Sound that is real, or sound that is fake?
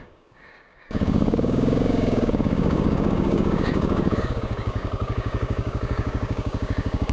fake